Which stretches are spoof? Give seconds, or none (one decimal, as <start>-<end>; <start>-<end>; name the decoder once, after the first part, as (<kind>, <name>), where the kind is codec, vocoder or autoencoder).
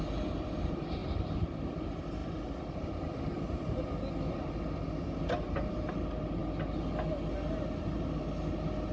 none